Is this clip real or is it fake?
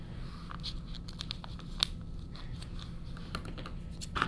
real